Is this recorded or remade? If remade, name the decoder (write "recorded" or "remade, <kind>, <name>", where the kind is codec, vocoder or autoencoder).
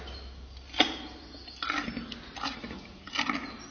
recorded